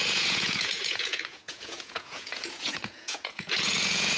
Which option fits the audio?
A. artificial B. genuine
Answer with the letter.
A